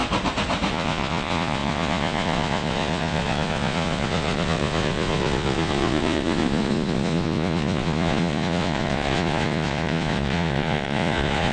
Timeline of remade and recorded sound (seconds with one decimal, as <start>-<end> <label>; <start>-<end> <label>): 0.0-0.7 recorded; 0.7-11.5 remade